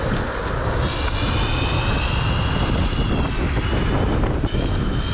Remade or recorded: recorded